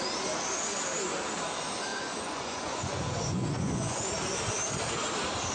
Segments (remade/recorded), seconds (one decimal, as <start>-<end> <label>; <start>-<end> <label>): 0.0-1.9 recorded; 1.9-4.0 remade; 4.0-5.5 recorded